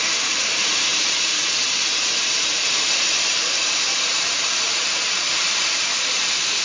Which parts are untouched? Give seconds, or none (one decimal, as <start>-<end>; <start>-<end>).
none